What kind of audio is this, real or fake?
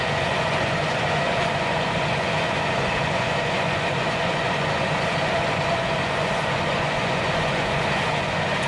fake